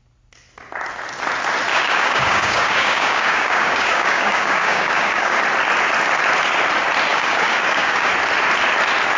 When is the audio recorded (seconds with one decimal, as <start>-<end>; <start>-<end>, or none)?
0.0-1.7; 5.4-7.1; 8.1-9.2